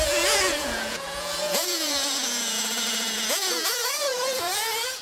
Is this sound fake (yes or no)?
yes